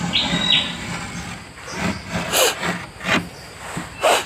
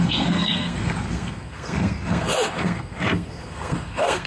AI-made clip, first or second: second